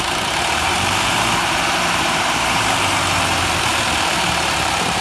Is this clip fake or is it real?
fake